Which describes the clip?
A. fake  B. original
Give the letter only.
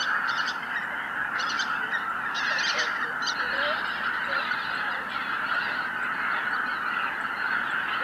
B